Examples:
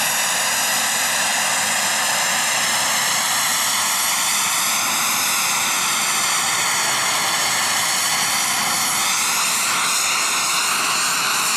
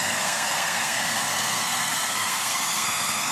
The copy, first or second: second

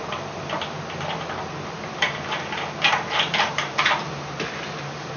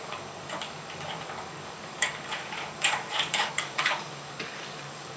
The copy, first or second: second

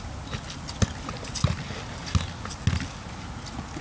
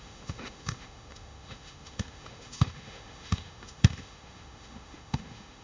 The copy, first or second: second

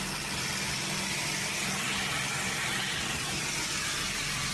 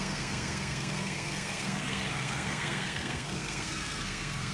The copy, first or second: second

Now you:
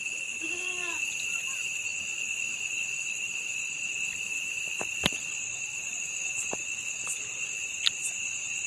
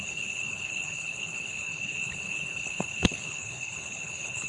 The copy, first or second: second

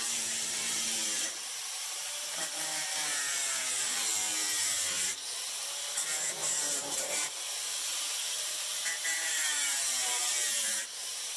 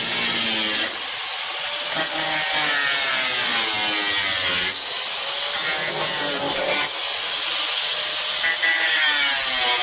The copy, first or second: first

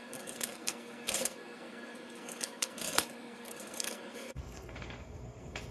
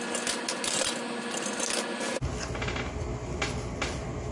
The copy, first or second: first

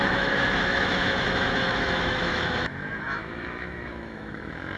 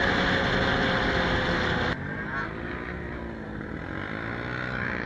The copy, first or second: first